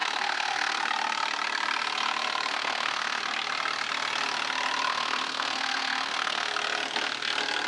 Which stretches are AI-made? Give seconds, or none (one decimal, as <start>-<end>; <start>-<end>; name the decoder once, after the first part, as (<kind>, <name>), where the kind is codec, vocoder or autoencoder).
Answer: 0.0-0.8 (codec, SNAC); 2.5-3.2; 4.9-6.5